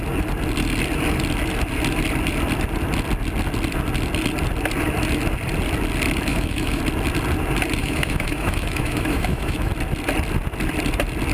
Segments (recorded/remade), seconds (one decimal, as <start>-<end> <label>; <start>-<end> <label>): 0.0-6.3 recorded; 6.3-6.8 remade; 6.8-7.8 recorded; 7.8-9.7 remade; 9.7-11.3 recorded

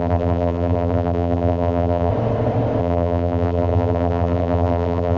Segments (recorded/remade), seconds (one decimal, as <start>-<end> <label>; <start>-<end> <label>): 0.0-2.1 remade; 2.1-2.8 recorded; 2.8-5.2 remade

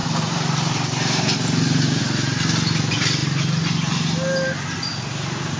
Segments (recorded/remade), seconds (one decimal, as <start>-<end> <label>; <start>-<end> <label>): 0.0-2.0 remade; 2.0-5.6 recorded

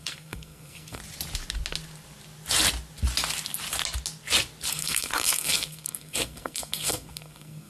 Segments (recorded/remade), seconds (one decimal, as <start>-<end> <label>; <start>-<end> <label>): 0.0-1.0 remade; 1.0-4.7 recorded; 4.7-7.7 remade

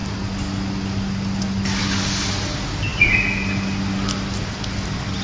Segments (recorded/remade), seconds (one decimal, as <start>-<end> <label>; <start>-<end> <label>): 0.0-5.2 recorded

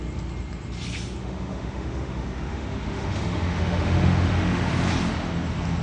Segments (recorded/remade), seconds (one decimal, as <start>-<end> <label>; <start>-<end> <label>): 0.0-1.2 recorded; 1.2-4.7 remade; 4.7-5.8 recorded

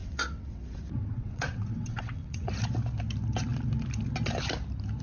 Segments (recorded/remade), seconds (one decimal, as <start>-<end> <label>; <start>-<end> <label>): 0.0-2.5 remade; 2.5-5.0 recorded